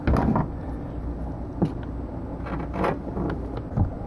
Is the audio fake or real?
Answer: real